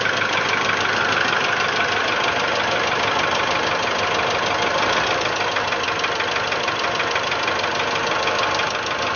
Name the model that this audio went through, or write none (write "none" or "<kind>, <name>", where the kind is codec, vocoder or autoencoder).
none